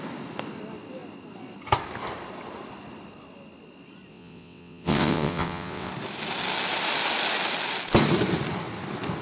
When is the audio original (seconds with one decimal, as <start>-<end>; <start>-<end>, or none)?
0.0-4.1; 5.9-9.2